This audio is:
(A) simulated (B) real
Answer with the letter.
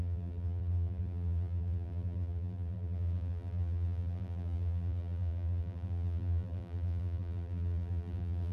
A